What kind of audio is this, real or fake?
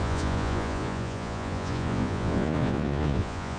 fake